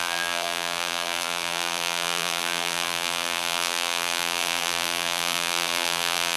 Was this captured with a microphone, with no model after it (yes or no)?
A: no